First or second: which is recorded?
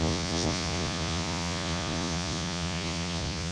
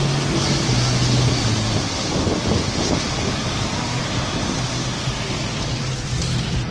second